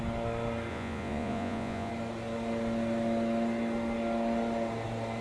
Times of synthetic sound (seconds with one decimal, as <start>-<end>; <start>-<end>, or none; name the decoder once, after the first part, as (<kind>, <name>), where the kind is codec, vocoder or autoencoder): 0.7-1.9 (vocoder, Vocos)